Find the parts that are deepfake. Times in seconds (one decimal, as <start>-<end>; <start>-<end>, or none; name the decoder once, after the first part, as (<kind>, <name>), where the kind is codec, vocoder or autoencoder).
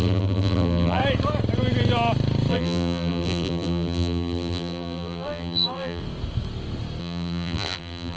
0.0-1.0 (vocoder, BigVGAN v2); 2.5-6.0; 7.0-8.2